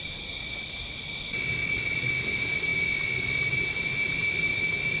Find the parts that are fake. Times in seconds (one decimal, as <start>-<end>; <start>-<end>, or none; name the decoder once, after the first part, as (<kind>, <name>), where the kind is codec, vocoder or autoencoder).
1.6-2.1 (vocoder, Vocos)